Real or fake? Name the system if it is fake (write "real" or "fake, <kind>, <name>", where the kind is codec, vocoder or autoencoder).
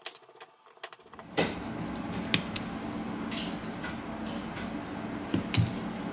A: real